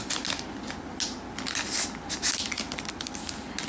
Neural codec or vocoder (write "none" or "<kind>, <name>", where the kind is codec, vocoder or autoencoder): none